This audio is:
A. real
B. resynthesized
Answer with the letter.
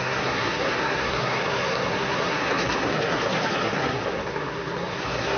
B